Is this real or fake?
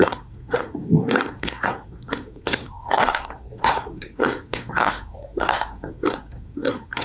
fake